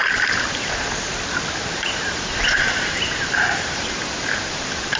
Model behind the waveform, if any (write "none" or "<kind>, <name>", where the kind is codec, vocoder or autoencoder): none